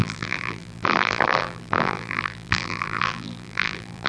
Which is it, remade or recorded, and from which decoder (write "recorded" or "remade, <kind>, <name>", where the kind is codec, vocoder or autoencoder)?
remade, vocoder, BigVGAN v2